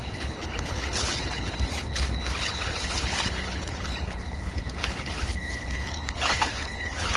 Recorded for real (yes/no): no